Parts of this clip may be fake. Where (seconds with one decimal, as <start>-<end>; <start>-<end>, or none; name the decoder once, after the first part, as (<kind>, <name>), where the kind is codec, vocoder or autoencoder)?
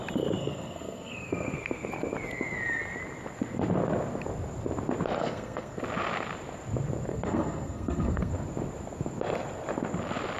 0.4-1.9 (codec, SNAC); 5.2-5.8; 7.1-8.3